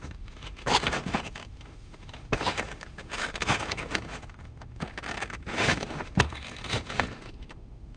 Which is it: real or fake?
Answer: fake